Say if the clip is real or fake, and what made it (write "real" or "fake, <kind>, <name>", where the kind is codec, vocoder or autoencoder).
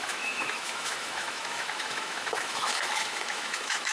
fake, autoencoder, DAC-VAE